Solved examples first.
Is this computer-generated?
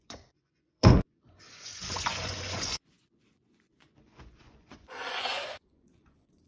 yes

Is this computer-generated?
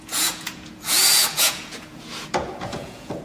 yes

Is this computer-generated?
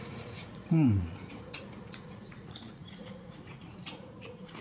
yes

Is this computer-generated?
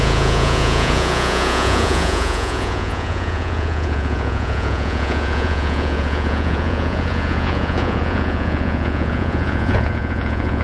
yes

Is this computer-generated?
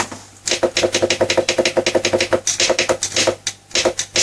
no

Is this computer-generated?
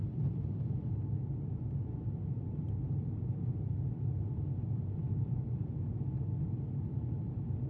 no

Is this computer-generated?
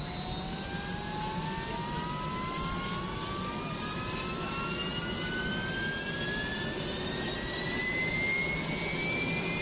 no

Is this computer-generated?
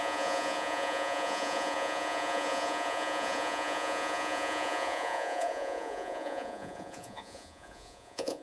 yes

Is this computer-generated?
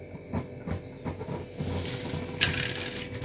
no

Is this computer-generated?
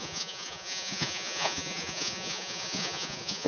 yes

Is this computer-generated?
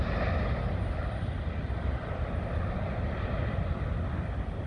no